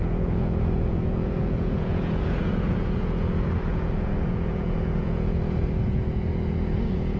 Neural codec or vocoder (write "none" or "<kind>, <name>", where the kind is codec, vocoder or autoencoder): vocoder, Vocos